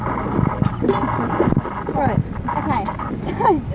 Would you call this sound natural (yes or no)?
yes